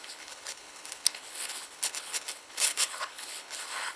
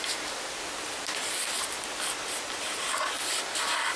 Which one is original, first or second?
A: second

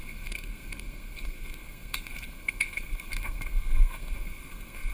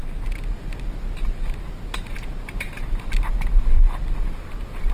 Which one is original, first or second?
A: second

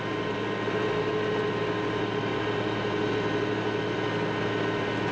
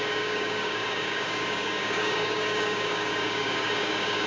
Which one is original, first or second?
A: first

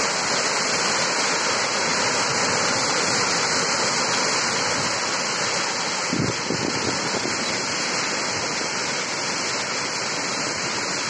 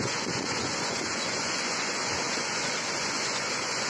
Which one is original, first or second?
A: first